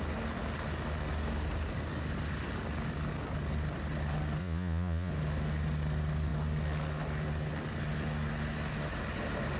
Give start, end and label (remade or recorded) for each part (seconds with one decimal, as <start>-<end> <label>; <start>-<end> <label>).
0.0-4.4 recorded; 4.4-5.1 remade; 5.1-9.6 recorded